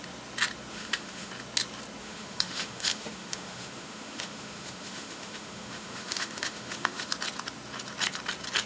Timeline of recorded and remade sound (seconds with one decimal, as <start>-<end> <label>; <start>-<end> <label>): 0.0-0.7 recorded; 0.7-1.3 remade; 1.3-2.0 recorded; 2.0-7.1 remade; 7.1-8.7 recorded

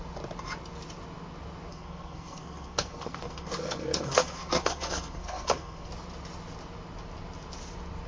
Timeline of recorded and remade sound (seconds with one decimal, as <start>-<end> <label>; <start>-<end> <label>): 0.0-1.7 recorded; 1.7-5.9 remade; 5.9-8.1 recorded

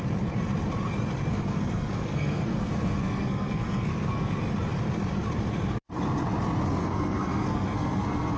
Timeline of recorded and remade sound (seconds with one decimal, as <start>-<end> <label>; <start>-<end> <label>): 0.0-1.3 recorded; 1.3-4.3 remade; 4.3-6.8 recorded; 6.8-8.4 remade

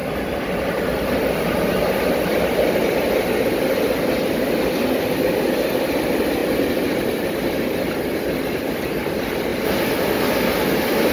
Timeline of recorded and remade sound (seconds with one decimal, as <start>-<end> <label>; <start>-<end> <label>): 0.0-11.1 recorded

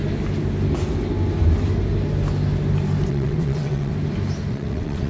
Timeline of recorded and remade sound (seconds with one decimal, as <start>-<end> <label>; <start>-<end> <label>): 0.0-3.1 recorded; 3.1-3.9 remade; 3.9-4.5 recorded; 4.5-5.1 remade